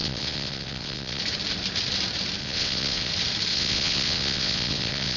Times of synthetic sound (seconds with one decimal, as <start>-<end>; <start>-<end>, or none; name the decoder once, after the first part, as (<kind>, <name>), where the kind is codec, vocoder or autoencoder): 0.0-1.2 (vocoder, WaveNeXt); 2.4-3.1; 3.5-5.2